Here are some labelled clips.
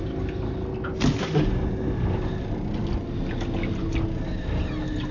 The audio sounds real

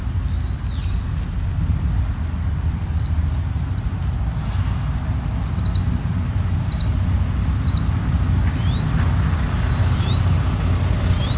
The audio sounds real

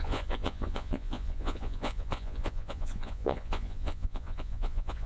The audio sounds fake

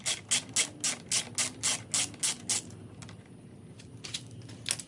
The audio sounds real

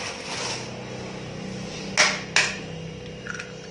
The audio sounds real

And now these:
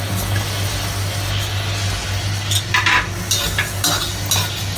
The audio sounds real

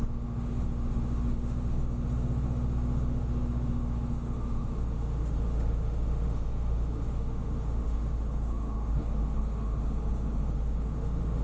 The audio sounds fake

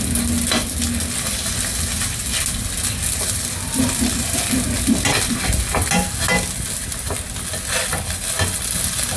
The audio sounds real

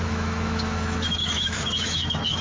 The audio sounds fake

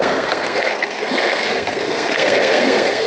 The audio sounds fake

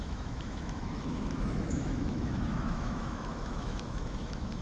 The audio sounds fake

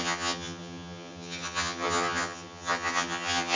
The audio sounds fake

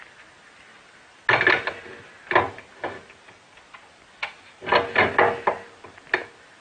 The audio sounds real